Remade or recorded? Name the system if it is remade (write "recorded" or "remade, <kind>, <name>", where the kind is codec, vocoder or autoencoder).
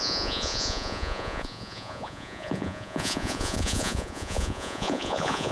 remade, vocoder, Vocos